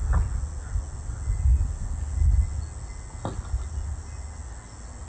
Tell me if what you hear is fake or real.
real